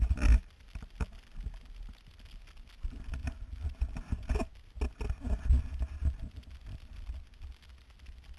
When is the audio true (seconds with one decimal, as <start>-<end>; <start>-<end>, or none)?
0.0-3.2; 4.1-8.4